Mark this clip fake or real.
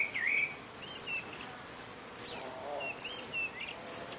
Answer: real